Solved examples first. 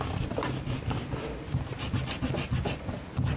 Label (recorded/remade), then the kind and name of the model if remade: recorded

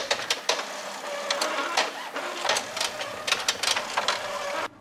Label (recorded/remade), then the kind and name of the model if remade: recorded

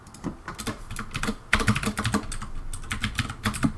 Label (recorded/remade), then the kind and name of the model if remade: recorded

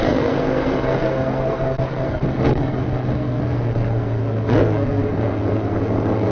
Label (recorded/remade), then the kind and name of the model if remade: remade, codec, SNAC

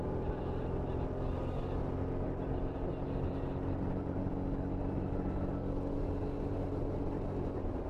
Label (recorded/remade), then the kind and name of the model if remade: recorded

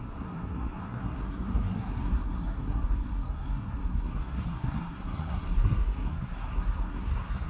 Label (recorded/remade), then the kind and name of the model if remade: remade, codec, SNAC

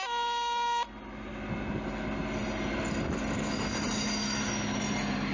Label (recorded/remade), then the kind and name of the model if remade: recorded